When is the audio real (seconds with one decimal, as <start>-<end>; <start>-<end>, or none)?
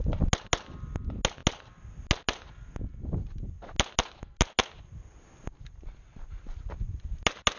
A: 0.0-7.6